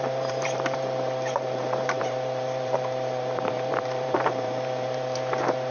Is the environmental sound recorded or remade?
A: remade